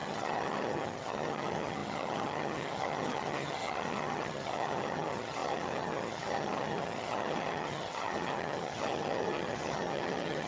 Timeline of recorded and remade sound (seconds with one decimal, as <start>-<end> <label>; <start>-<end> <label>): 0.0-10.5 remade

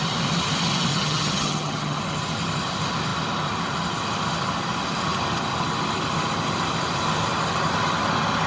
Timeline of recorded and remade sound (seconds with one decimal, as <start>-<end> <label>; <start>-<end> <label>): 0.0-0.9 recorded; 0.9-2.0 remade; 2.0-8.5 recorded

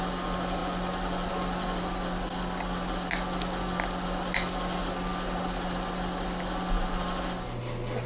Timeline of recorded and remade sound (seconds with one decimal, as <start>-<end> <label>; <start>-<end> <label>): 0.0-8.1 recorded

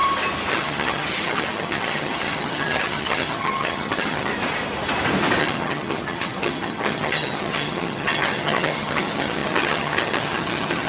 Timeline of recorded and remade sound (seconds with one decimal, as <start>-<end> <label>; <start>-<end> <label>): 0.0-0.5 recorded; 0.5-4.3 remade; 4.3-5.4 recorded; 5.4-10.9 remade

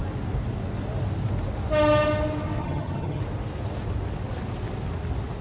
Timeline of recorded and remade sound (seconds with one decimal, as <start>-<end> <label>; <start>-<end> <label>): 0.0-2.6 recorded; 2.6-3.2 remade; 3.2-5.4 recorded

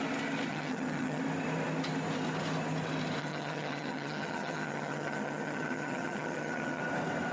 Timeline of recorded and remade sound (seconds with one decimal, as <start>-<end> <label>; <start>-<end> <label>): 0.0-0.5 recorded; 0.5-1.2 remade; 1.2-3.2 recorded; 3.2-6.8 remade; 6.8-7.3 recorded

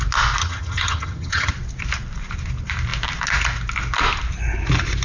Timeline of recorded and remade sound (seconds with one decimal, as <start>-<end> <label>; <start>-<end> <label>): 0.0-0.4 recorded; 0.4-1.5 remade; 1.5-5.0 recorded